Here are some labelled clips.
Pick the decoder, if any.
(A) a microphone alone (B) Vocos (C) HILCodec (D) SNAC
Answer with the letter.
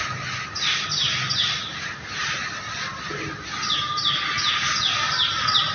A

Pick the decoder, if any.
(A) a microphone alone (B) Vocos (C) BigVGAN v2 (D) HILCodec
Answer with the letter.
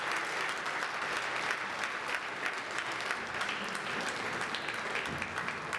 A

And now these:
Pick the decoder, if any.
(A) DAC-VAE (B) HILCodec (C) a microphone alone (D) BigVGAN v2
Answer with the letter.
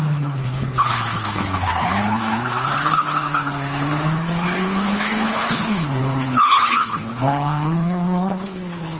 B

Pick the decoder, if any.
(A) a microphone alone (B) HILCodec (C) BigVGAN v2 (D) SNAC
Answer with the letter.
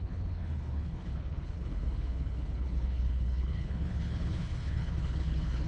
B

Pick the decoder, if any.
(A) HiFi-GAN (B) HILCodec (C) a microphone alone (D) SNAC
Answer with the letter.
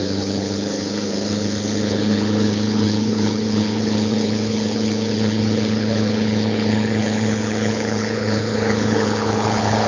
B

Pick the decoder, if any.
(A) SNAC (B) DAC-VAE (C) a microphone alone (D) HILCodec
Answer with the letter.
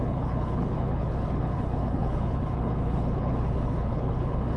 D